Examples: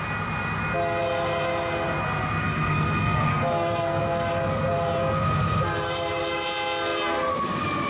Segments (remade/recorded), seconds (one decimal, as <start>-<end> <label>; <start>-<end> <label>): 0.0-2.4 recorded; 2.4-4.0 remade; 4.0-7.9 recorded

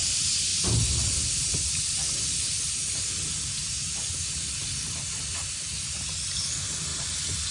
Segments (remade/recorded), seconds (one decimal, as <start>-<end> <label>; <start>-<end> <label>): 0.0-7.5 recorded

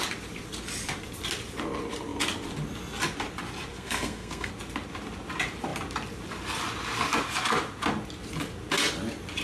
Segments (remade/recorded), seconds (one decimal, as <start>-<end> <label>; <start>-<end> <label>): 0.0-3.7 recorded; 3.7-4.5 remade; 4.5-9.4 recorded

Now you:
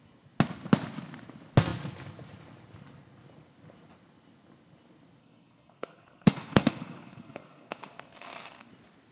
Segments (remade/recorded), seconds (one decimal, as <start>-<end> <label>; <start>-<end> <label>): 0.0-5.2 recorded; 5.2-8.7 remade; 8.7-9.1 recorded